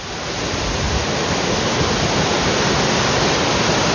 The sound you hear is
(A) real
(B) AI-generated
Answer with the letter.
A